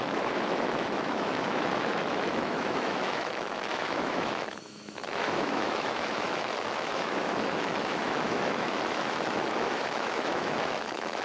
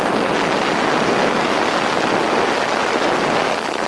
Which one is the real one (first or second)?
second